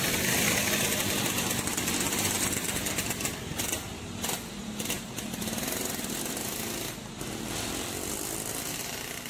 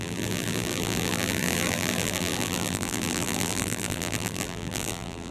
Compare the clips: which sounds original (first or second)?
first